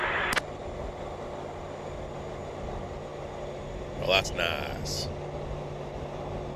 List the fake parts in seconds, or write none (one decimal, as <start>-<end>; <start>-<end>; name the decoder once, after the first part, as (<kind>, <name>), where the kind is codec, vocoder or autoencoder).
none